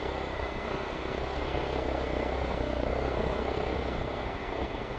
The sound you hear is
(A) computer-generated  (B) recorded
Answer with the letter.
A